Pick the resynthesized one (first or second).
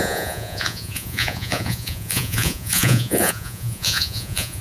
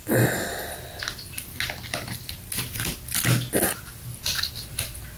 first